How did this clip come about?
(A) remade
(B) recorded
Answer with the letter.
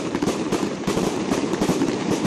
A